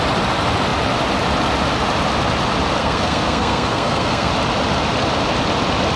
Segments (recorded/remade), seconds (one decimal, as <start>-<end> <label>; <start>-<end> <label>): 0.0-2.8 recorded; 2.8-4.3 remade; 4.3-6.0 recorded